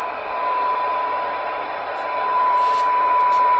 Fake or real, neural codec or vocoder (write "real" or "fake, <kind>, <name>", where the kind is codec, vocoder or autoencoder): fake, vocoder, BigVGAN v2